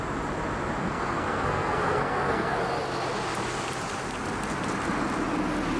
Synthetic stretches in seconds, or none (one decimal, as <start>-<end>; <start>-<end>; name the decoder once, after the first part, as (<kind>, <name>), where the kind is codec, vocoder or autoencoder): 0.8-2.6 (codec, SNAC)